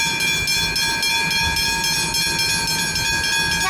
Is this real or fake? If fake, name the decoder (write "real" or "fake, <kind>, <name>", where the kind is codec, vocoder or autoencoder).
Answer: real